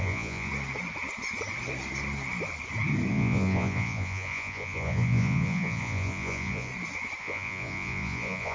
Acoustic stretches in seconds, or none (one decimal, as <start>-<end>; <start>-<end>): 0.5-3.1; 6.7-7.2